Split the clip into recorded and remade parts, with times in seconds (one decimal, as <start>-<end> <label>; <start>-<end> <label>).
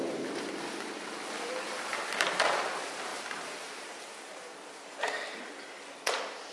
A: 0.0-1.9 recorded; 1.9-2.7 remade; 2.7-3.1 recorded; 3.1-5.4 remade; 5.4-6.5 recorded